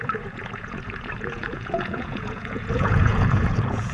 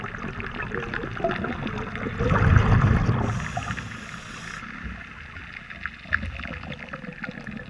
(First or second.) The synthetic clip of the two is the first